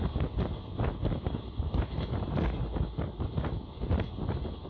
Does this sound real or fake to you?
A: real